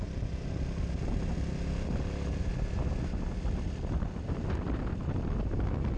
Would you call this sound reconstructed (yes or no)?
no